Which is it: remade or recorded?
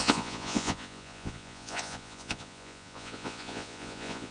remade